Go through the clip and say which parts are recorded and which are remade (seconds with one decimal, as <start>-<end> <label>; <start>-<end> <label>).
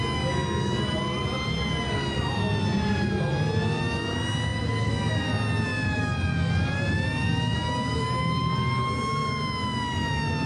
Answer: 0.0-10.5 recorded